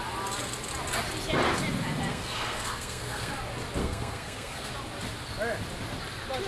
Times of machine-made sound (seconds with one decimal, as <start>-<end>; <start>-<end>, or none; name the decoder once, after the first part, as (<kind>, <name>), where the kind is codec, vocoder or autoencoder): 2.1-3.3 (codec, SNAC); 3.8-4.7